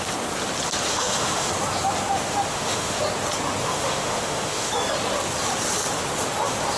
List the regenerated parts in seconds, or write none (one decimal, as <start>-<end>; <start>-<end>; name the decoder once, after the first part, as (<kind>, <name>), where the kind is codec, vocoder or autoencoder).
0.9-1.5 (autoencoder, DAC-VAE); 2.5-3.0; 3.6-4.7